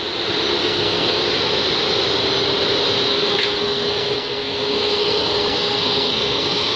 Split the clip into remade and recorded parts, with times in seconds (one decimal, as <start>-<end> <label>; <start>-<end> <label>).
0.0-0.6 recorded; 0.6-1.2 remade; 1.2-3.1 recorded; 3.1-6.8 remade